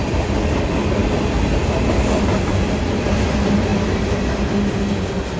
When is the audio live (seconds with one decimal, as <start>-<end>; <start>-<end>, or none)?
0.0-5.4